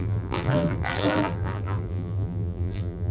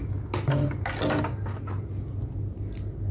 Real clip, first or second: second